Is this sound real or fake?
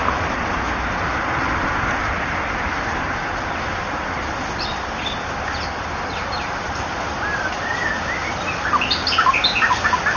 real